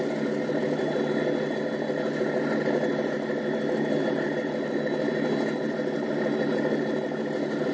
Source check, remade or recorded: recorded